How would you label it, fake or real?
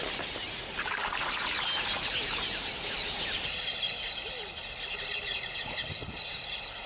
real